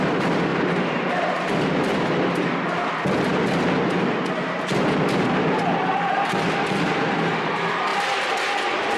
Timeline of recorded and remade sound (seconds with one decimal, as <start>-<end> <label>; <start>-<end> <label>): 0.0-9.0 recorded